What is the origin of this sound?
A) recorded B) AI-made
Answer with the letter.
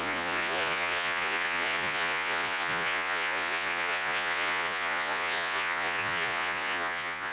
B